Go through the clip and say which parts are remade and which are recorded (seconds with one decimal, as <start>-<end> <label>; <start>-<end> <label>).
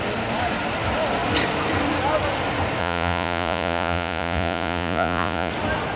0.0-2.8 recorded; 2.8-5.5 remade; 5.5-6.0 recorded